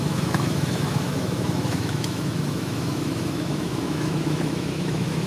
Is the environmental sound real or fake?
fake